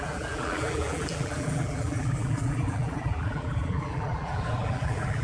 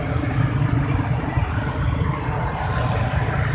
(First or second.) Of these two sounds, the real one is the second